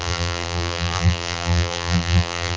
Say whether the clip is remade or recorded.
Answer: remade